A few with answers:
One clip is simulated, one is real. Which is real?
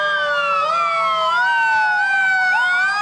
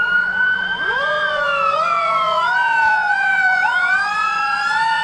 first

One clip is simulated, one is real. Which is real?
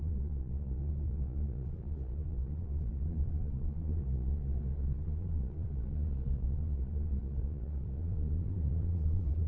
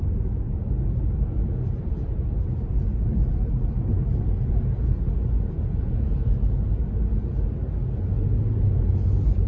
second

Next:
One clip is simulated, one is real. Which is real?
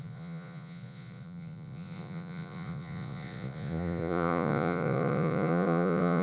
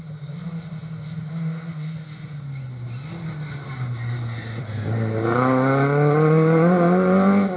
second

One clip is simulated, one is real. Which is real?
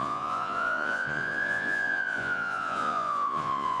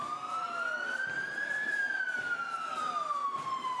second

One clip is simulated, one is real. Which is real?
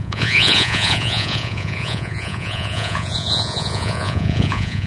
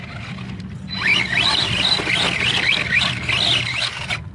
second